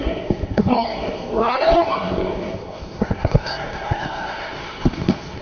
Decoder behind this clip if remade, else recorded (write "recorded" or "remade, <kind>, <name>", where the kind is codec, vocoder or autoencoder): remade, codec, SNAC